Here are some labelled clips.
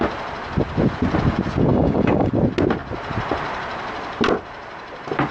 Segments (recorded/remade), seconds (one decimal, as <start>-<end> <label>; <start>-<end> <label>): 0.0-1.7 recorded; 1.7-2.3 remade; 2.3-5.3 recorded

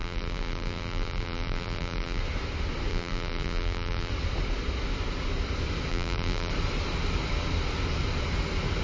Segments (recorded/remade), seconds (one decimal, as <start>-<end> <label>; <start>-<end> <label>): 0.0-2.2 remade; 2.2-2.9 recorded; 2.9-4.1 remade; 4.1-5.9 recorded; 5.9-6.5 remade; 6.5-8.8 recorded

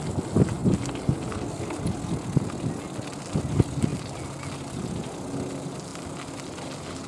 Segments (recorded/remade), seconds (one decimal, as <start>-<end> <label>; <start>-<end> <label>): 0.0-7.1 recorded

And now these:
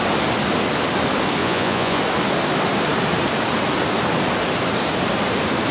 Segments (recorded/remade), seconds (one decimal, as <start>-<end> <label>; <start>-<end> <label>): 0.0-1.4 recorded; 1.4-2.0 remade; 2.0-5.7 recorded